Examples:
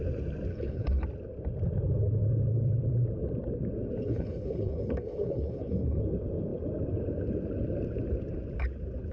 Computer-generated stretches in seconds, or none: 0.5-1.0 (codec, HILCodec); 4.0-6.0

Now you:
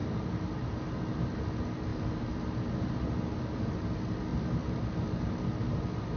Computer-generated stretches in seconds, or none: 4.3-5.2 (vocoder, BigVGAN v2)

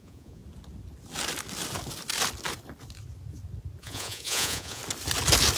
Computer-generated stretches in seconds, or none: 0.0-0.4 (vocoder, Vocos); 3.8-4.8

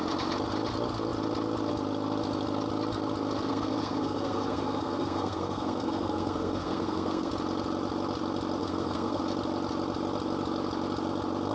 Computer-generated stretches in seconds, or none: 3.5-7.3 (codec, SNAC); 8.6-9.2

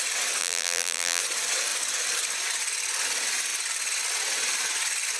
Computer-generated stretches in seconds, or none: 0.4-1.2 (vocoder, BigVGAN v2)

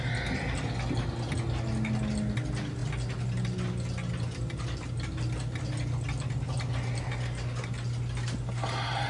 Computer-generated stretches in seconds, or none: none

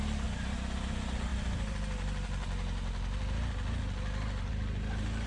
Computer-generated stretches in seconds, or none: none

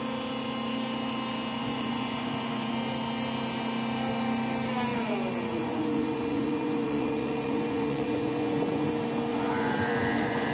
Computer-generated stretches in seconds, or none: 1.6-2.7 (vocoder, Vocos); 4.9-8.9; 9.3-10.5